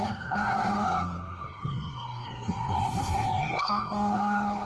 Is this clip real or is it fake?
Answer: fake